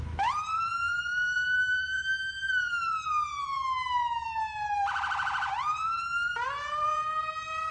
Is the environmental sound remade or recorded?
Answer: remade